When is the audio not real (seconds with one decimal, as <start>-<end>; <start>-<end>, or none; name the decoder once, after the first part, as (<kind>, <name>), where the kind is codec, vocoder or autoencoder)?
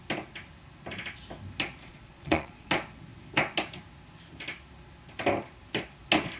1.9-2.7 (vocoder, Vocos)